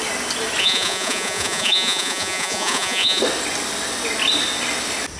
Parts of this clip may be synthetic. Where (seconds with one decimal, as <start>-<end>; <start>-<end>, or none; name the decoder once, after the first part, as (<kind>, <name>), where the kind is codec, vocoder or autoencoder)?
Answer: 0.6-3.2 (vocoder, Vocos)